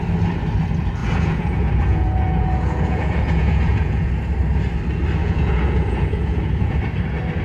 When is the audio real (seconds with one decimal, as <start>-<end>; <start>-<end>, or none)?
0.0-1.0; 4.1-5.2; 6.8-7.4